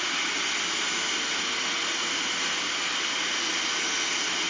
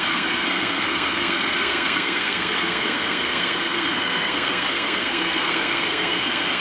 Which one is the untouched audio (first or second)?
first